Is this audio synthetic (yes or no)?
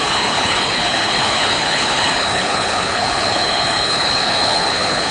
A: yes